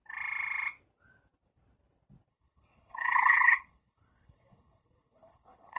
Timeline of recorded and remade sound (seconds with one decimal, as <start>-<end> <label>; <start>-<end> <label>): 0.0-2.3 recorded; 2.3-5.8 remade